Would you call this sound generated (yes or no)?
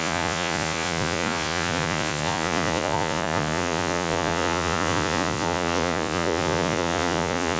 yes